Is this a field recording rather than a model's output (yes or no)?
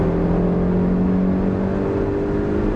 yes